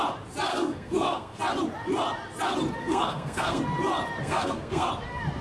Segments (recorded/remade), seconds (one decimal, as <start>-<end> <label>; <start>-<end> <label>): 0.0-0.5 recorded; 0.5-1.4 remade; 1.4-2.8 recorded; 2.8-3.6 remade; 3.6-4.2 recorded; 4.2-4.9 remade; 4.9-5.4 recorded

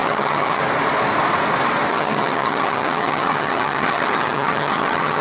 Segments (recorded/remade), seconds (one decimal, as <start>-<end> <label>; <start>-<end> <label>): 0.0-0.6 remade; 0.6-1.9 recorded; 1.9-5.2 remade

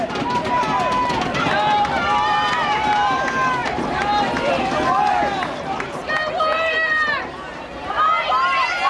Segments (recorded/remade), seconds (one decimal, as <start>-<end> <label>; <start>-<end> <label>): 0.0-8.9 recorded

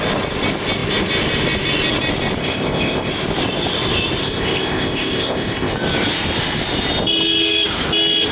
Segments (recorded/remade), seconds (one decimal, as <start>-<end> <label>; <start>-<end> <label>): 0.0-2.4 recorded; 2.4-3.1 remade; 3.1-4.2 recorded; 4.2-5.7 remade; 5.7-8.3 recorded

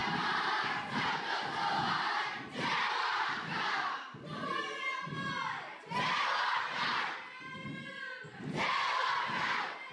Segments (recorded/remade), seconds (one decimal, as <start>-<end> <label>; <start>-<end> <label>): 0.0-3.6 remade; 3.6-9.9 recorded

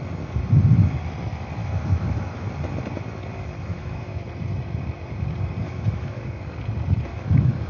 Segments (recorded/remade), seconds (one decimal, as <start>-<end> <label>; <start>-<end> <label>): 0.0-1.6 recorded; 1.6-2.5 remade; 2.5-3.7 recorded; 3.7-4.3 remade; 4.3-5.6 recorded; 5.6-6.4 remade; 6.4-7.1 recorded; 7.1-7.7 remade

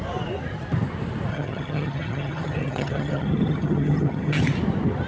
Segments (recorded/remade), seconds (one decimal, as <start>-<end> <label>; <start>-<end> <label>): 0.0-1.3 recorded; 1.3-4.4 remade; 4.4-5.1 recorded

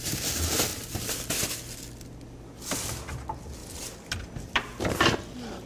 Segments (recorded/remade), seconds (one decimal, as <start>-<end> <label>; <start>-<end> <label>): 0.0-0.7 recorded; 0.7-1.5 remade; 1.5-5.7 recorded